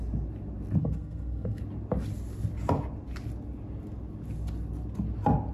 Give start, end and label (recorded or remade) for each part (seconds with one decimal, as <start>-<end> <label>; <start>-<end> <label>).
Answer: 0.0-0.8 recorded; 0.8-1.6 remade; 1.6-5.5 recorded